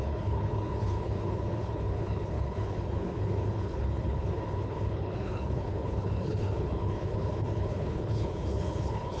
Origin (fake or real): fake